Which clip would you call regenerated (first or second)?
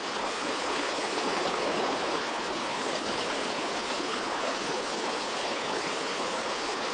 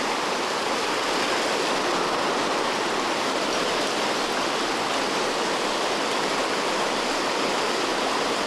first